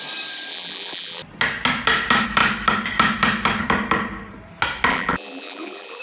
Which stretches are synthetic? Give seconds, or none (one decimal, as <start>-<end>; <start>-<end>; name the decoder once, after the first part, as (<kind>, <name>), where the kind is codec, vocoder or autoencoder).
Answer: 0.5-1.2 (vocoder, BigVGAN v2); 4.9-6.0